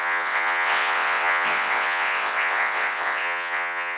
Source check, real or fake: fake